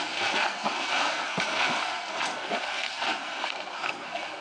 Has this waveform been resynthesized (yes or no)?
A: yes